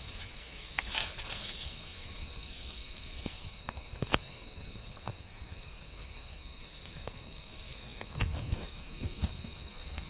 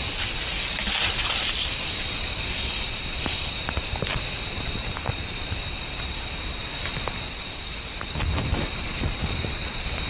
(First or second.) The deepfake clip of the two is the first